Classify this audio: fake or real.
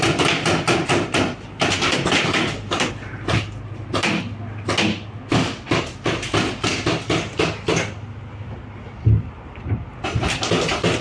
real